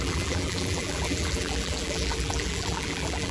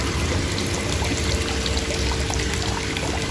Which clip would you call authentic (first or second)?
second